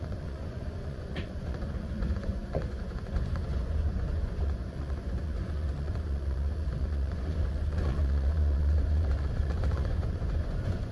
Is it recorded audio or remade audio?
remade